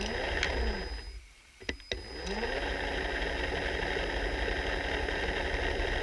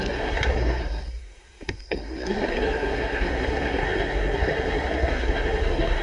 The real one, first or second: first